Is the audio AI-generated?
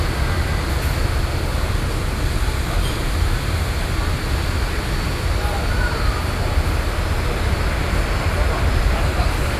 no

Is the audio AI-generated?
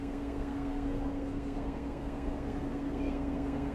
yes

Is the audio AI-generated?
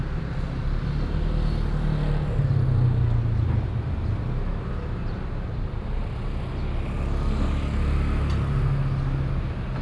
no